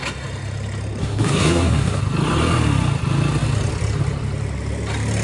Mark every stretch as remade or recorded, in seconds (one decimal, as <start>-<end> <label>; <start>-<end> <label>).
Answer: 0.0-1.0 recorded; 1.0-2.0 remade; 2.0-5.2 recorded